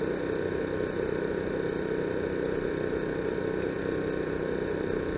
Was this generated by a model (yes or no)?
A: no